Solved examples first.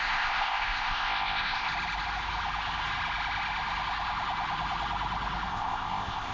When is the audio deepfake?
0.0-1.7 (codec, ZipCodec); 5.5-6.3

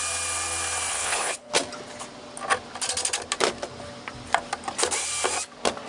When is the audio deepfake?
0.9-1.5 (codec, HILCodec)